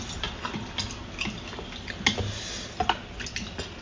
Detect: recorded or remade recorded